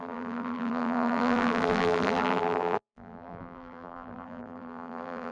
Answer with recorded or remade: remade